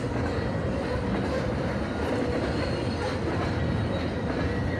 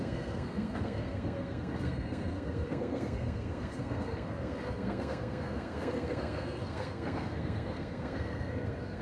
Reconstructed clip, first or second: second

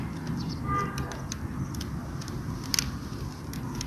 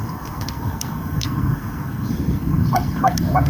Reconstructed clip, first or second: second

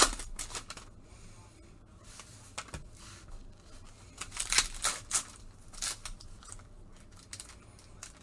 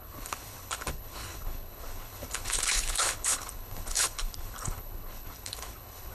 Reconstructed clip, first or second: second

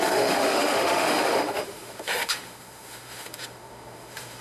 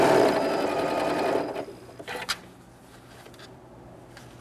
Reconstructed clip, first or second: first